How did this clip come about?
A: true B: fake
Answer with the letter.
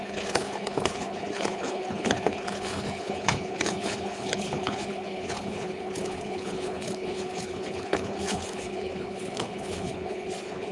B